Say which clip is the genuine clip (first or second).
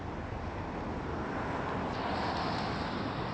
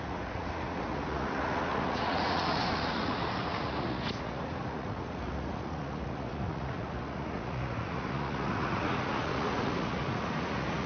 first